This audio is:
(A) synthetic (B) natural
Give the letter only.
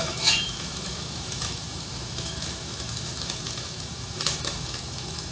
A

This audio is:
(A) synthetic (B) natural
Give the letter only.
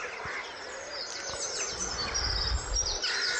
B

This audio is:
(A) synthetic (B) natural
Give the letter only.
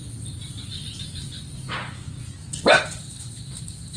B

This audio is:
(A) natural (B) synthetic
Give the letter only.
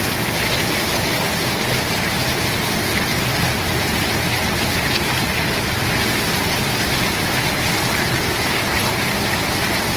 A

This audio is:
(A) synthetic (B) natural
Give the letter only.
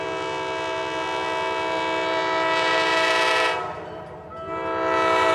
B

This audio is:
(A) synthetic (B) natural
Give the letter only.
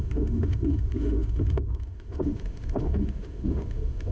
A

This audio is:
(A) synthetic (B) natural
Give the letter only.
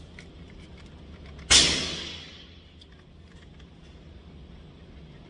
B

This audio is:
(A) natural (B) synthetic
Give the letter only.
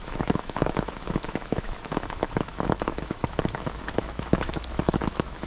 B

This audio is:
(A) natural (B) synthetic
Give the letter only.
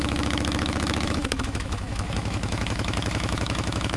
B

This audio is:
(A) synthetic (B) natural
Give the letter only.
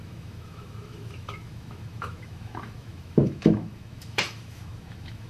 A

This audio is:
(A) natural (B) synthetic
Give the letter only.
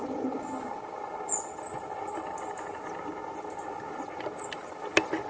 A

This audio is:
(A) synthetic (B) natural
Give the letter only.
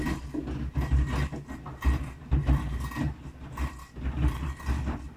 B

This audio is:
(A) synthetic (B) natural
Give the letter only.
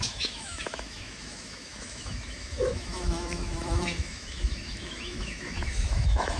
A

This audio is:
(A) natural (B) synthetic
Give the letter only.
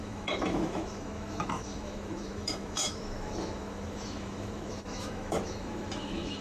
B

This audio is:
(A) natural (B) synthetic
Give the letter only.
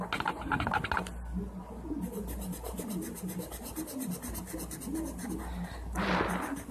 A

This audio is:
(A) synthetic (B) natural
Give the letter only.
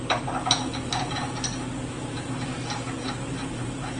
B